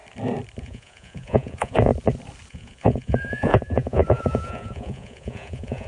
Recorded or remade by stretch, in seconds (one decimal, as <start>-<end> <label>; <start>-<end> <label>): 0.0-0.6 recorded; 0.6-1.9 remade; 1.9-2.5 recorded; 2.5-5.9 remade